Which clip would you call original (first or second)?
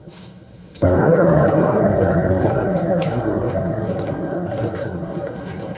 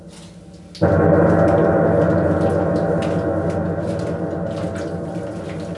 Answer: second